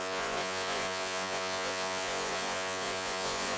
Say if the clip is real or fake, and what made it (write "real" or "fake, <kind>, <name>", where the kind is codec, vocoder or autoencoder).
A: fake, vocoder, Vocos